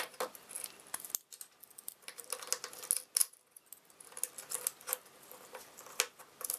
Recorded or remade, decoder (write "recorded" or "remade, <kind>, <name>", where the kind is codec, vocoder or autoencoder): recorded